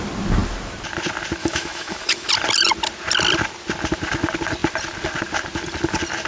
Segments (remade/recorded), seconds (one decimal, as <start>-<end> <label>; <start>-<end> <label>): 0.0-1.4 recorded; 1.4-2.3 remade; 2.3-6.3 recorded